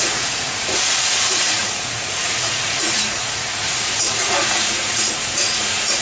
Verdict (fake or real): fake